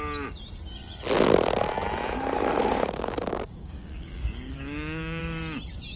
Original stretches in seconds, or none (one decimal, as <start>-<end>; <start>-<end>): 0.0-2.6; 5.2-6.0